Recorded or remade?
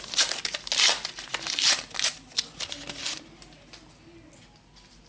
recorded